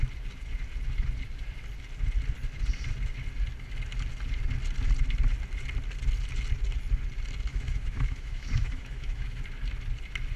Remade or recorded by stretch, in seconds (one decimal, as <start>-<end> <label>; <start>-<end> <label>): 0.0-7.5 recorded; 7.5-9.4 remade; 9.4-10.4 recorded